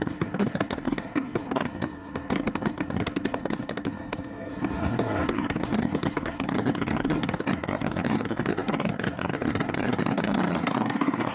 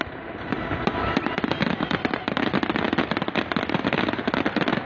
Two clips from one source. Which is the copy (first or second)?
first